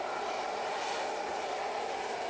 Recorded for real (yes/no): no